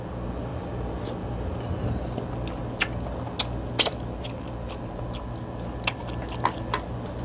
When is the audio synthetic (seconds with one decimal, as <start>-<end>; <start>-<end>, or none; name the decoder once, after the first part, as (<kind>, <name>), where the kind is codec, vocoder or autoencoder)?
none